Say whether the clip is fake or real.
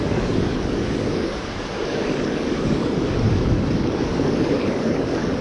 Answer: fake